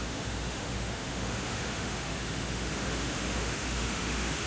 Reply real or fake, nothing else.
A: fake